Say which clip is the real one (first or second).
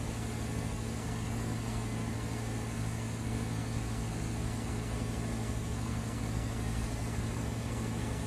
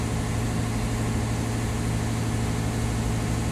second